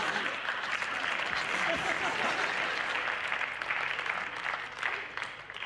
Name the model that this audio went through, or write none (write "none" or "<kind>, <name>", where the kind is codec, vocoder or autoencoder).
none